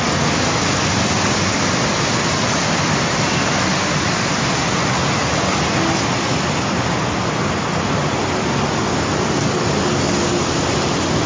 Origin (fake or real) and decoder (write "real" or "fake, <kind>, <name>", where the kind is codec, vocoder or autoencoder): real